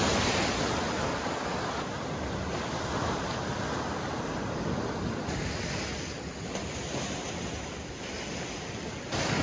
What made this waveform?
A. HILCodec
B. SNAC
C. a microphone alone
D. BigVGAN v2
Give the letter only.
C